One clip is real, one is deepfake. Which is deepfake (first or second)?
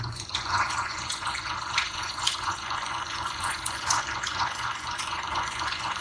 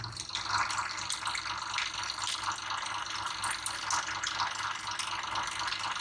first